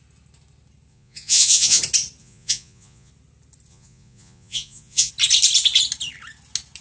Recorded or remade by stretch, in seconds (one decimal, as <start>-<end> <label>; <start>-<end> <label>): 0.0-0.9 recorded; 0.9-1.8 remade; 1.8-2.2 recorded; 2.2-3.1 remade; 3.1-3.7 recorded; 3.7-5.1 remade; 5.1-6.8 recorded